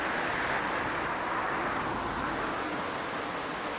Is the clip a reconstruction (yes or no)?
no